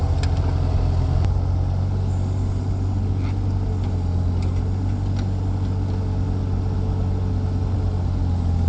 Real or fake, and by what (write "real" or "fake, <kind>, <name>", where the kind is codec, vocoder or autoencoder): real